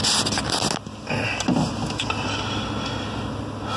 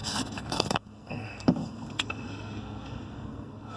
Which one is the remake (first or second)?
second